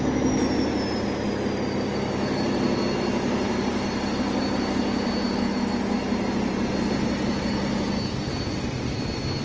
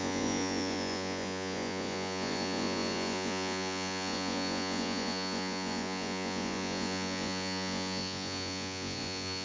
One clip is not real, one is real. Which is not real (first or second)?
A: second